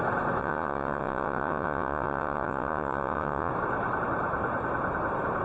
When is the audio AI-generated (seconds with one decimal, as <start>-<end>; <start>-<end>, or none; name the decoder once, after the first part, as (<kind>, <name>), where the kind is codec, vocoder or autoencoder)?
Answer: 0.4-3.5 (vocoder, WaveNeXt)